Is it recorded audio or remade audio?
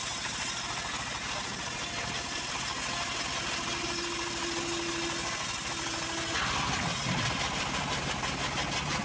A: recorded